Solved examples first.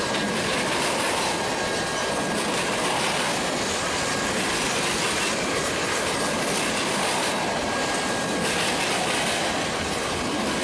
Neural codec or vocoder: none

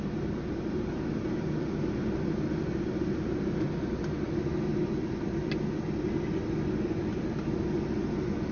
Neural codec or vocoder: none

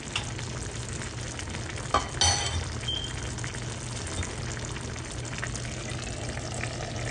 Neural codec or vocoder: none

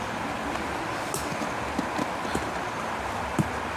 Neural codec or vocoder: none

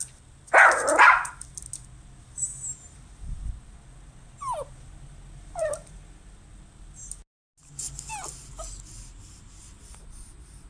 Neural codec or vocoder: none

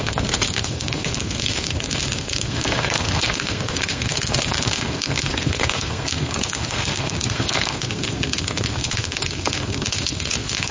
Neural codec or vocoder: codec, SNAC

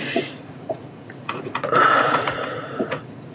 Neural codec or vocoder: vocoder, Vocos